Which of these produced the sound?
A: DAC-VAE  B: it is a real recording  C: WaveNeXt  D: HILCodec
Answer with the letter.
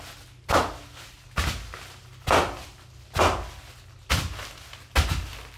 B